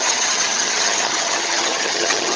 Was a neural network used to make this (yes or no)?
yes